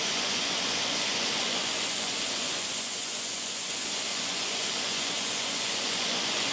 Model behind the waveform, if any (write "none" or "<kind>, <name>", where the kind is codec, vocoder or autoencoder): vocoder, Vocos